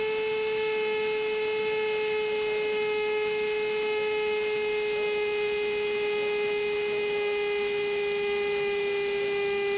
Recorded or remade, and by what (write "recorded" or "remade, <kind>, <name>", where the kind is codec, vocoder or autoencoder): remade, autoencoder, DAC-VAE